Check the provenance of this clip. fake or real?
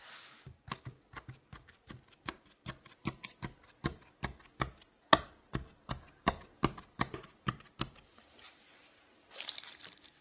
fake